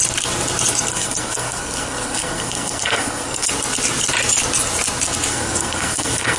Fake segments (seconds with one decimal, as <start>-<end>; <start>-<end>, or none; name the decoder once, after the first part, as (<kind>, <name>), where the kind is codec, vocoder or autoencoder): 0.9-3.5 (codec, SNAC); 5.3-6.4